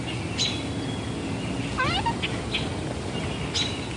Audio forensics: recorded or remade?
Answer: recorded